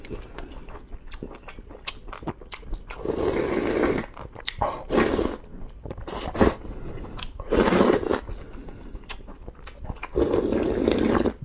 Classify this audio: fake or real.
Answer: real